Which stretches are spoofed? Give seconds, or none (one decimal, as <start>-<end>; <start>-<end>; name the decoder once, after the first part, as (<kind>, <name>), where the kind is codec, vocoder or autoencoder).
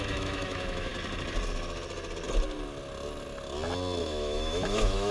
0.0-0.9 (autoencoder, DAC-VAE); 4.0-5.1